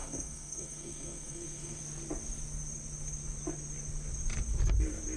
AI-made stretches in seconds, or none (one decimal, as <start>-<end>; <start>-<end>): 0.0-1.8